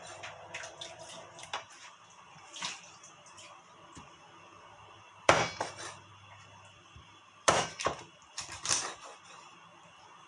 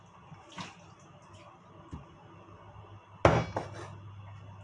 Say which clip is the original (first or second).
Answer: second